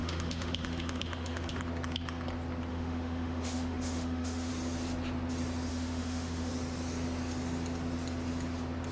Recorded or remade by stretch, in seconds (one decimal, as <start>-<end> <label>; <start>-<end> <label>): 0.0-1.6 remade; 1.6-2.7 recorded; 2.7-4.5 remade; 4.5-5.7 recorded; 5.7-6.5 remade; 6.5-8.9 recorded